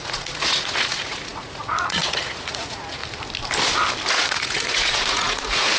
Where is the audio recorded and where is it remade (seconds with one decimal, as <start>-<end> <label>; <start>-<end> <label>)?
0.0-3.0 remade; 3.0-4.1 recorded; 4.1-5.8 remade